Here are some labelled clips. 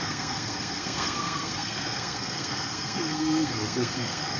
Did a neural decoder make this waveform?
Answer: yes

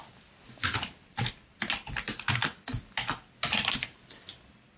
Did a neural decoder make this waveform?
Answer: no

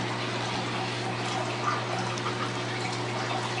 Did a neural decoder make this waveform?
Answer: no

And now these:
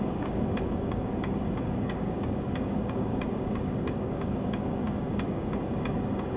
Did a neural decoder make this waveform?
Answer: yes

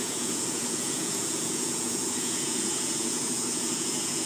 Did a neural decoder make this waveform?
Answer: yes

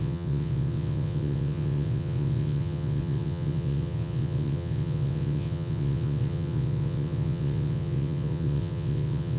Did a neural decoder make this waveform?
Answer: yes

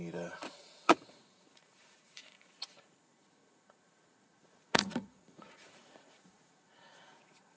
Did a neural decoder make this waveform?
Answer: yes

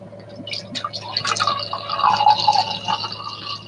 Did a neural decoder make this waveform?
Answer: no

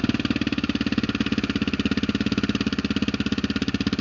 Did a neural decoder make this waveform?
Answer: no